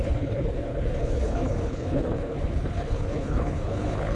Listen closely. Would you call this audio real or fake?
fake